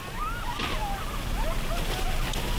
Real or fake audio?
real